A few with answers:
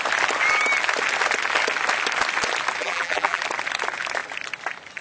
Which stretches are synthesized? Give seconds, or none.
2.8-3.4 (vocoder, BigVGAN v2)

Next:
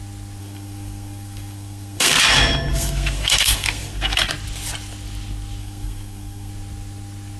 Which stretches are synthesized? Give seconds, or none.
0.4-2.2 (codec, SNAC); 2.7-4.3; 5.6-6.5

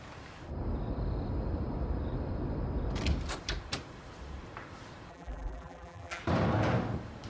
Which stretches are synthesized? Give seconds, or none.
5.1-6.2 (vocoder, BigVGAN v2)

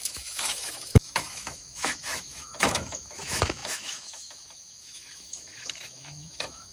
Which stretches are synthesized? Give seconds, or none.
0.0-6.7 (autoencoder, DAC-VAE)

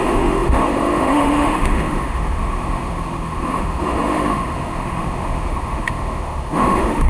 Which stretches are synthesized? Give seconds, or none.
0.0-7.1 (autoencoder, DAC-VAE)

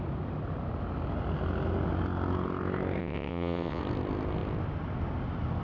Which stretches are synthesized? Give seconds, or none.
3.0-3.8 (vocoder, WaveNeXt)